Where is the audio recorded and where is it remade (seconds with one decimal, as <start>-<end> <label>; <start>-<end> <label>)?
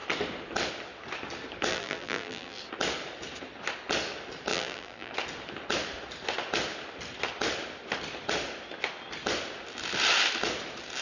0.0-1.7 recorded; 1.7-2.6 remade; 2.6-4.5 recorded; 4.5-5.1 remade; 5.1-11.0 recorded